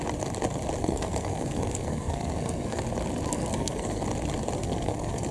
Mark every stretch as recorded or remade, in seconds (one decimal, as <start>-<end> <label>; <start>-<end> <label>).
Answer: 0.0-0.8 recorded; 0.8-2.8 remade; 2.8-3.3 recorded; 3.3-4.0 remade; 4.0-4.6 recorded; 4.6-5.3 remade